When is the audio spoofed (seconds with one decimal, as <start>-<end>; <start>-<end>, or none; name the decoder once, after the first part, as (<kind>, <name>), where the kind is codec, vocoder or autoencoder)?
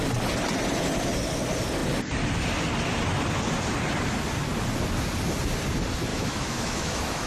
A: 6.1-7.3 (autoencoder, DAC-VAE)